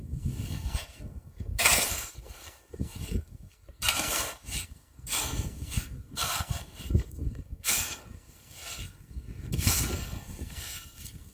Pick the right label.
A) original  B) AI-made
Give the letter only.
B